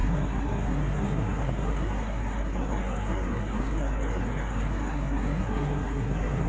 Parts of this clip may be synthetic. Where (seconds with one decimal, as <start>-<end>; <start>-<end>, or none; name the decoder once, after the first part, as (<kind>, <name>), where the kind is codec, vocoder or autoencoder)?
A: 0.0-6.5 (codec, SNAC)